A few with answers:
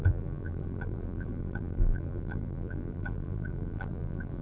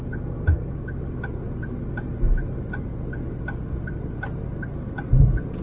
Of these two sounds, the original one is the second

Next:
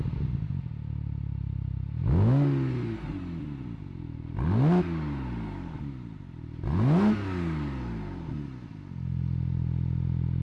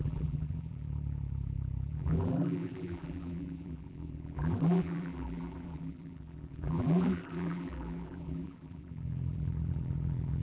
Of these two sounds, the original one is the first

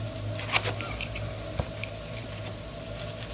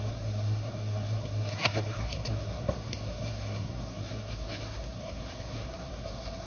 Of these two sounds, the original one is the first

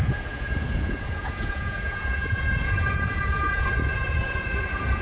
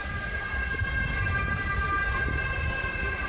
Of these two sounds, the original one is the second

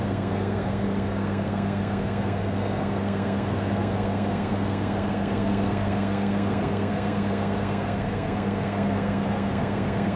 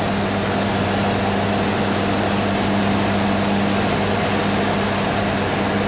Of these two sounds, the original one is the second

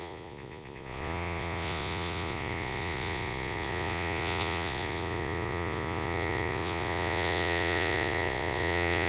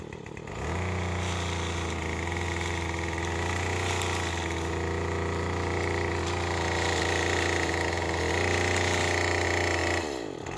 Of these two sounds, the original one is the second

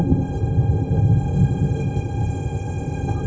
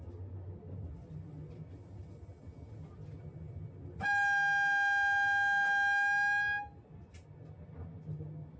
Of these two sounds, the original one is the second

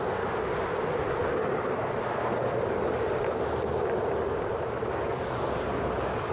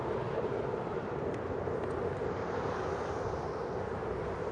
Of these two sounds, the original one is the first